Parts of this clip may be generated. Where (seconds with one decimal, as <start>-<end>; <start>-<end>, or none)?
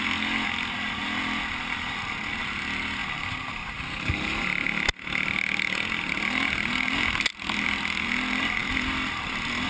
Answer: none